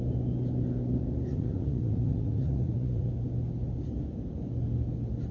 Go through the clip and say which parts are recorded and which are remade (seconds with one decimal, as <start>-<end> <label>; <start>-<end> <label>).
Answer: 0.0-1.3 recorded; 1.3-3.1 remade; 3.1-5.3 recorded

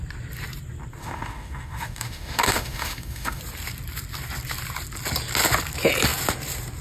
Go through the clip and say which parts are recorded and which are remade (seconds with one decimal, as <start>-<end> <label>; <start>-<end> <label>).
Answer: 0.0-1.0 recorded; 1.0-3.4 remade; 3.4-6.8 recorded

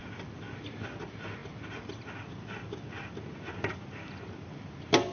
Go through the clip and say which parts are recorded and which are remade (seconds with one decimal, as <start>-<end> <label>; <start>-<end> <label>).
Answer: 0.0-5.1 recorded

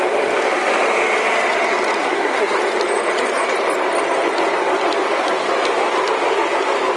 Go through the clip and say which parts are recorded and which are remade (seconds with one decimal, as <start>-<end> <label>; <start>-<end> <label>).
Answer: 0.0-2.0 recorded; 2.0-2.6 remade; 2.6-7.0 recorded

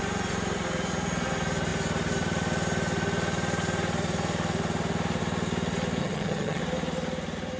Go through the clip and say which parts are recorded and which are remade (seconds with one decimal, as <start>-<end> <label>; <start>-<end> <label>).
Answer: 0.0-6.0 recorded; 6.0-6.6 remade; 6.6-7.6 recorded

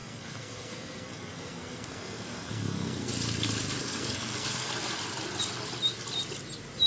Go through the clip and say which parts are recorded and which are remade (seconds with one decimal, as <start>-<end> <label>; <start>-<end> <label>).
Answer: 0.0-3.1 remade; 3.1-3.8 recorded; 3.8-4.7 remade; 4.7-6.9 recorded